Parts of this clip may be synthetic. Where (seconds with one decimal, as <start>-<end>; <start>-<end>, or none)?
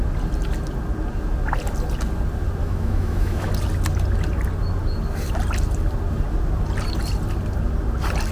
2.6-3.5